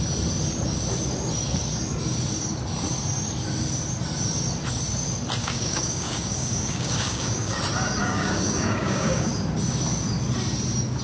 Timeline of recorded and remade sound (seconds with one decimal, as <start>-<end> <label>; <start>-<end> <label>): 0.0-5.4 recorded; 5.4-7.6 remade; 7.6-8.0 recorded; 8.0-9.3 remade; 9.3-11.0 recorded